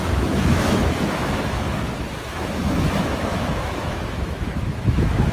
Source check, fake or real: fake